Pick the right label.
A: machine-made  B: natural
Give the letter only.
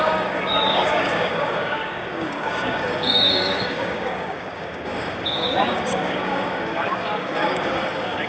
A